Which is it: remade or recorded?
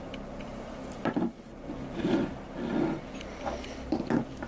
recorded